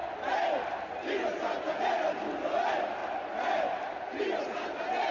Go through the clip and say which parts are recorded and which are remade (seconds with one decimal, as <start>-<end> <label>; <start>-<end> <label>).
0.0-5.1 recorded